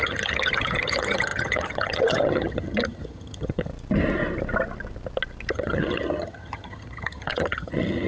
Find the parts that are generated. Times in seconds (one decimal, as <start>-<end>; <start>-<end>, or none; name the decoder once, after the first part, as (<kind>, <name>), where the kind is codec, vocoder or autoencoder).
0.0-3.7 (vocoder, HiFi-GAN); 5.5-8.1